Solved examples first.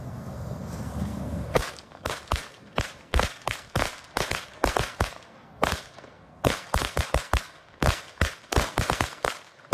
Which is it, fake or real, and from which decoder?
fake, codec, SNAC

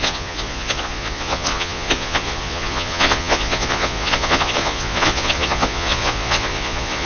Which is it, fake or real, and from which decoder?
fake, vocoder, Vocos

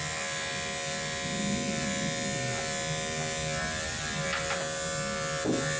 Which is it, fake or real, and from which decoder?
real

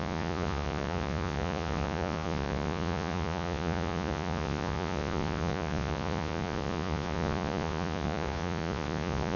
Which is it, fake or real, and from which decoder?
fake, vocoder, Vocos